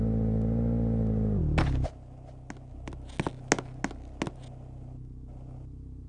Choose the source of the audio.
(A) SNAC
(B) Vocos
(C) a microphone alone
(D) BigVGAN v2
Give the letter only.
C